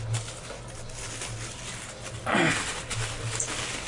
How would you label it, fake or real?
real